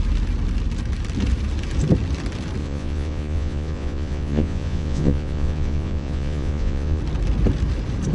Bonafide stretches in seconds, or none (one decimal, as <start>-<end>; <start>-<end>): 0.0-2.6; 7.0-8.1